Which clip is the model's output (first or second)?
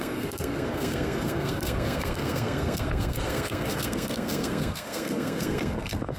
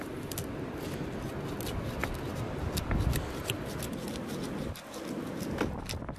first